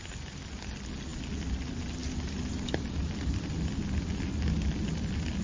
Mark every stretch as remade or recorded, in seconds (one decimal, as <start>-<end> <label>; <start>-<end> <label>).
0.0-5.4 recorded